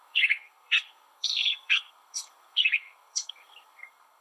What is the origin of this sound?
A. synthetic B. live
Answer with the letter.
A